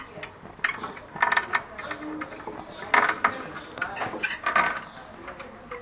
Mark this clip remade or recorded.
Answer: recorded